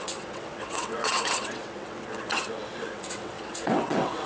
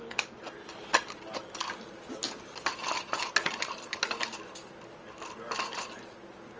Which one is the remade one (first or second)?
first